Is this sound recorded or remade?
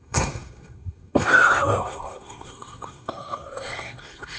remade